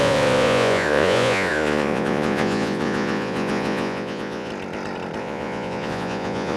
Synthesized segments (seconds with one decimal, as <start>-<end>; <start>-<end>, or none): 0.0-4.5; 5.2-6.6